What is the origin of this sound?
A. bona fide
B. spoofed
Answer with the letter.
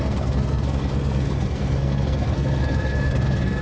B